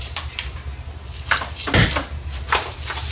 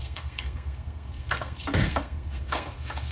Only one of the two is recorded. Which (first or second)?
first